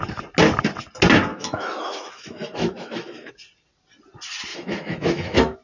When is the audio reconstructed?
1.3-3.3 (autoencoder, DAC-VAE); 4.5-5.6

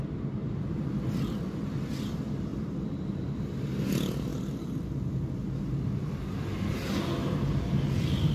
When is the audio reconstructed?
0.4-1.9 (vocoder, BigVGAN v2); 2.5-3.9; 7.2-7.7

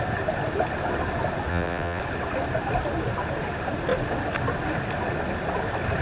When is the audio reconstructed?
1.5-2.0 (vocoder, WaveNeXt)

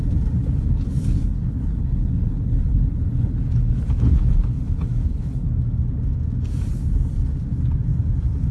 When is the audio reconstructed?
0.4-5.5 (codec, HILCodec)

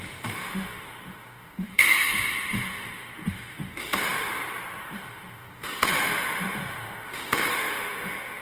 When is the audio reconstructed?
0.0-4.3 (autoencoder, DAC-VAE); 4.8-8.4

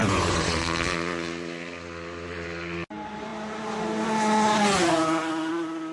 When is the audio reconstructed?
0.0-0.6 (vocoder, Vocos)